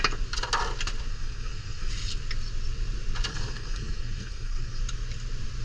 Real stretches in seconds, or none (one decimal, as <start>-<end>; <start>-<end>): 0.0-1.1; 1.9-3.3; 4.8-5.6